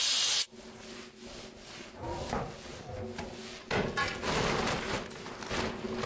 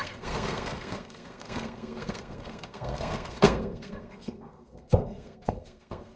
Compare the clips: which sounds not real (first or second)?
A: second